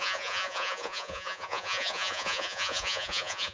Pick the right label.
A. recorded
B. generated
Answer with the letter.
B